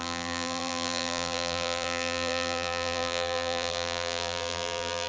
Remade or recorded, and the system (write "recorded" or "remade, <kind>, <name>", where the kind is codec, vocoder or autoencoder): remade, vocoder, BigVGAN v2